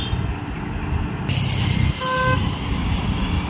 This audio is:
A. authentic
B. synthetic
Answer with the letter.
A